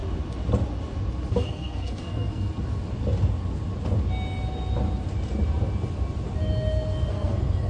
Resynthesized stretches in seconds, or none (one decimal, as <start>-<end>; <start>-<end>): 1.3-2.5; 7.1-7.7